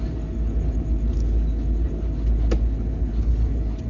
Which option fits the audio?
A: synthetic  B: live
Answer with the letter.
B